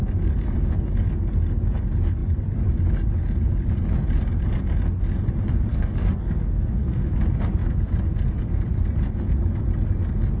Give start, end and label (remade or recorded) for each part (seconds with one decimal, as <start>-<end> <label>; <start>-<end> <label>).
0.0-5.7 recorded; 5.7-7.1 remade; 7.1-10.4 recorded